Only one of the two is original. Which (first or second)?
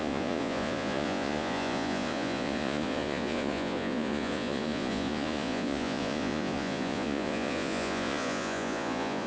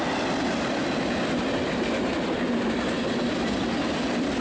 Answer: second